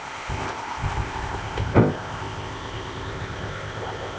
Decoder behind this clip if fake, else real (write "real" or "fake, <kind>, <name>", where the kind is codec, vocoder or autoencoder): fake, codec, ZipCodec